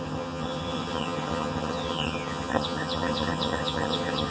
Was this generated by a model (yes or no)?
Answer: yes